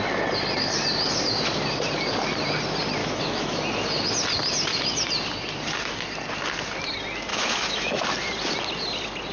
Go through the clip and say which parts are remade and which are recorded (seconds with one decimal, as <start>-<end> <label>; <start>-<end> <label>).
0.0-3.0 recorded; 3.0-3.6 remade; 3.6-7.3 recorded; 7.3-8.0 remade; 8.0-9.3 recorded